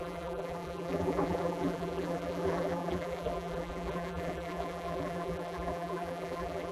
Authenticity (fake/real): fake